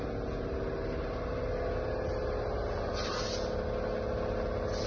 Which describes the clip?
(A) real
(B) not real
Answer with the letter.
A